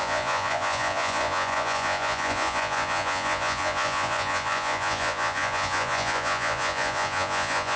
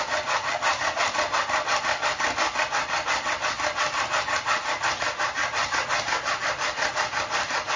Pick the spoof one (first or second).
first